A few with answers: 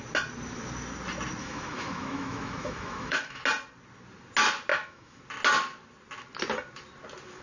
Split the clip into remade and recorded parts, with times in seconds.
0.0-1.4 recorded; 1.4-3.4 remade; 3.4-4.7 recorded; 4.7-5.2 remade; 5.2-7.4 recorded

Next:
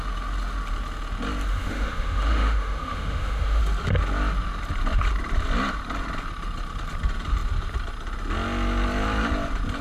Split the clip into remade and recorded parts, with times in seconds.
0.0-1.5 recorded; 1.5-3.6 remade; 3.6-9.8 recorded

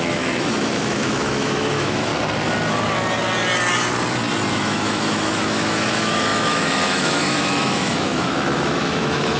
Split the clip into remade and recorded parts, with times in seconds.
0.0-2.1 remade; 2.1-4.5 recorded; 4.5-9.4 remade

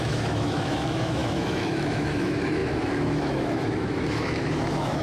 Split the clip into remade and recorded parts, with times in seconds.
0.0-5.0 remade

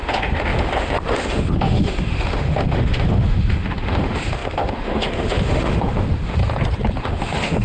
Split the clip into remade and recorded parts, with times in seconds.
0.0-6.4 remade; 6.4-7.0 recorded; 7.0-7.6 remade

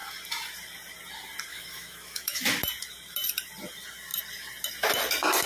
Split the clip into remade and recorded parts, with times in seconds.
0.0-1.5 recorded; 1.5-2.4 remade; 2.4-5.5 recorded